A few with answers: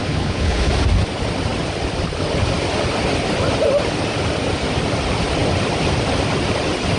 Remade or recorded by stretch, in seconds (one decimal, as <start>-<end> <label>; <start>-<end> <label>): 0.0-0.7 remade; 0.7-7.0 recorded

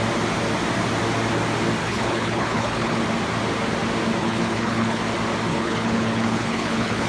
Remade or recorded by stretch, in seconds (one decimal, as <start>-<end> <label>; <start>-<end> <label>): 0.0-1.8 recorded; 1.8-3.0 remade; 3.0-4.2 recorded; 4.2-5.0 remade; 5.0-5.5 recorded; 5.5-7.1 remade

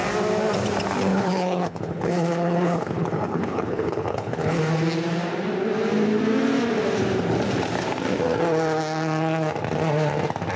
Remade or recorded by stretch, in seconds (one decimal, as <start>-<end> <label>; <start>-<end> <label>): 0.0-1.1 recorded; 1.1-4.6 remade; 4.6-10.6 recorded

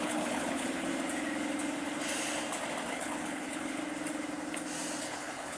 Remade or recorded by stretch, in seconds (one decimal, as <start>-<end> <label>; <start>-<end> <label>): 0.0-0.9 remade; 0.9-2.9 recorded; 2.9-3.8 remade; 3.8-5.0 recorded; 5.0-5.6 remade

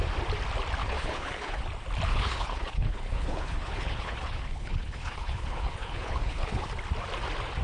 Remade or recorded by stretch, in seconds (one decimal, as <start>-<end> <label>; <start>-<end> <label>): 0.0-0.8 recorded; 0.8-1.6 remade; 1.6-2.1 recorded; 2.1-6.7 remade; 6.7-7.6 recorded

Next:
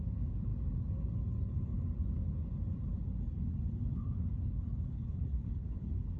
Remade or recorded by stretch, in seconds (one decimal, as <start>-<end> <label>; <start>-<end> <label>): 0.0-0.5 remade; 0.5-3.7 recorded; 3.7-6.2 remade

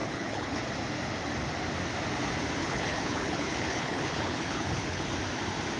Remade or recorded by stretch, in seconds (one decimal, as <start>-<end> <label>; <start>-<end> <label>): 0.0-0.6 remade; 0.6-2.6 recorded; 2.6-5.1 remade; 5.1-5.8 recorded

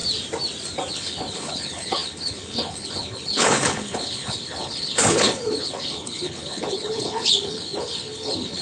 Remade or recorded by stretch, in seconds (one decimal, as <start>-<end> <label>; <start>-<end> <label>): 0.0-0.9 recorded; 0.9-8.6 remade